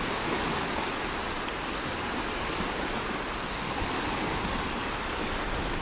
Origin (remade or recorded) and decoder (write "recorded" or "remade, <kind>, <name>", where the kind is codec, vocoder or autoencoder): recorded